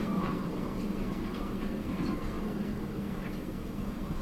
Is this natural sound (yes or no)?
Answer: no